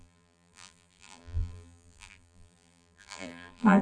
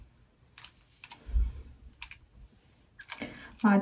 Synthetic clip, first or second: first